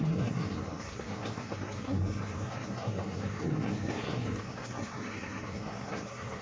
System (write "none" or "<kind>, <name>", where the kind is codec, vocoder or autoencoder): codec, SNAC